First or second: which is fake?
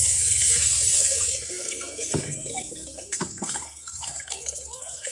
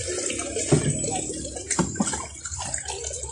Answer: first